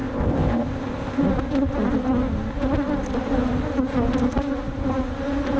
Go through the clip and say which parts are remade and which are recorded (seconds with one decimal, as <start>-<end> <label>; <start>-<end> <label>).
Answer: 0.0-1.2 remade; 1.2-5.6 recorded